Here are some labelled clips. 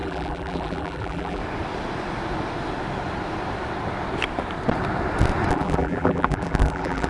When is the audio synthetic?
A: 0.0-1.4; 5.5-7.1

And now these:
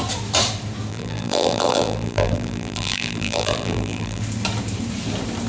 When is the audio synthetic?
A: 0.9-4.2

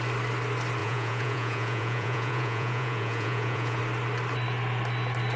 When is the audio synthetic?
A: 0.8-3.8

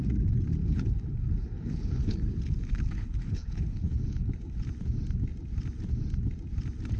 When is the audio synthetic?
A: 0.6-4.6

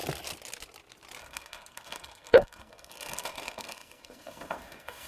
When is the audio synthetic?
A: 1.2-5.1